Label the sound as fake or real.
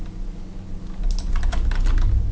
real